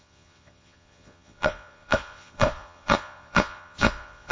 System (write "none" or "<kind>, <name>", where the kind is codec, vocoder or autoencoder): vocoder, Vocos